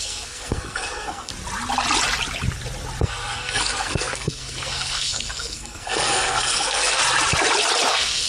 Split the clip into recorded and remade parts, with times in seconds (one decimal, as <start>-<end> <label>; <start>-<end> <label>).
0.0-1.3 remade; 1.3-3.0 recorded; 3.0-7.0 remade; 7.0-7.9 recorded; 7.9-8.3 remade